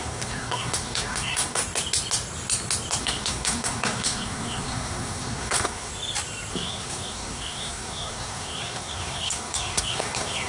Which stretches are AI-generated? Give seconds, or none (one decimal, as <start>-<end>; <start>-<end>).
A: 0.0-1.6; 3.0-5.9; 6.5-10.5